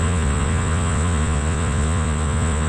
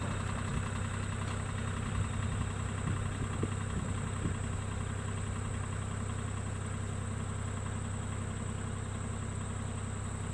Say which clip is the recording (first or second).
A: second